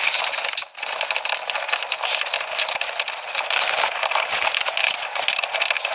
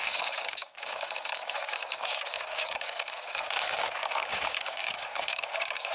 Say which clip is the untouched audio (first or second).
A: first